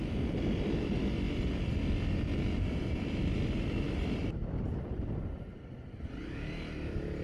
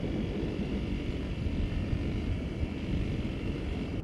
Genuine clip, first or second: first